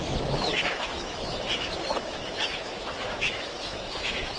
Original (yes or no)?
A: no